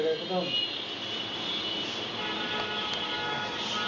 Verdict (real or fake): real